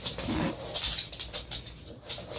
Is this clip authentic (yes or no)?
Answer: yes